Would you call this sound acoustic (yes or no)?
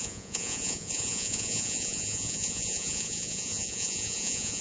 no